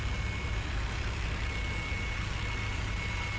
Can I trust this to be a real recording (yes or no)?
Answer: yes